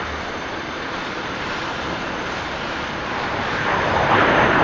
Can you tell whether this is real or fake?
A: fake